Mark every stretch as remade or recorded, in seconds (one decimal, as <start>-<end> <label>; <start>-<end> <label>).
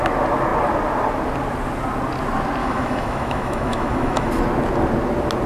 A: 0.0-2.6 recorded; 2.6-4.3 remade; 4.3-5.5 recorded